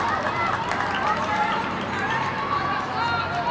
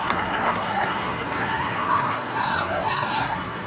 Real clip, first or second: first